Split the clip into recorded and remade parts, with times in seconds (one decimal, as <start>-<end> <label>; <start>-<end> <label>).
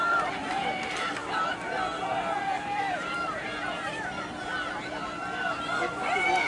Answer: 0.0-1.2 remade; 1.2-2.4 recorded; 2.4-6.5 remade